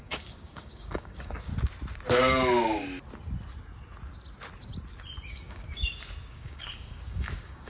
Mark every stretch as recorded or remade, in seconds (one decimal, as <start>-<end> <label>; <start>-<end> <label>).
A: 0.0-1.5 remade; 1.5-5.3 recorded; 5.3-7.7 remade